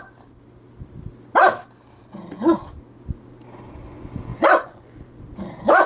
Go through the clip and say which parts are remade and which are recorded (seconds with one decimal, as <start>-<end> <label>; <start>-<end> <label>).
0.0-4.3 recorded; 4.3-5.2 remade; 5.2-5.9 recorded